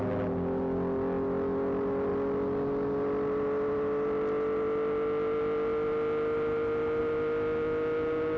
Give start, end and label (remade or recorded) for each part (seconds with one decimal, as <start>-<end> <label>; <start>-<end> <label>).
0.0-8.4 recorded